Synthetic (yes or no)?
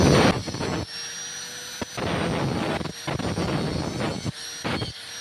no